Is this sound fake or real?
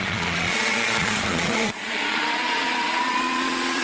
fake